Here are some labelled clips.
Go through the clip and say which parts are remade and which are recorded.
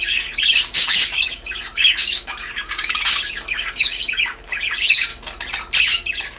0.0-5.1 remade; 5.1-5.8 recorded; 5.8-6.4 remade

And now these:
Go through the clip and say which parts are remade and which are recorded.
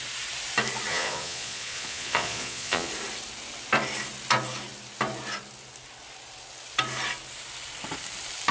0.0-0.9 recorded; 0.9-2.9 remade; 2.9-8.5 recorded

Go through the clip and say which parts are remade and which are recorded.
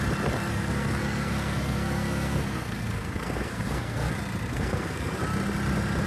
0.0-0.5 recorded; 0.5-4.1 remade; 4.1-4.5 recorded; 4.5-5.2 remade; 5.2-6.1 recorded